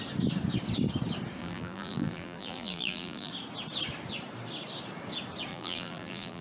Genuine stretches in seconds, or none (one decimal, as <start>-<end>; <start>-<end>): 0.0-1.4; 3.3-5.5